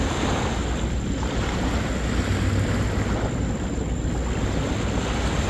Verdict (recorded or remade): recorded